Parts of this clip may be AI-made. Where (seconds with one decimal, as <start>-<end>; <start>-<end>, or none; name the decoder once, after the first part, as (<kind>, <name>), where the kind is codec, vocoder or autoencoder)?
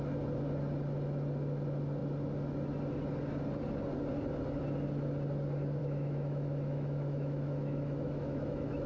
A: 5.8-8.9 (autoencoder, DAC-VAE)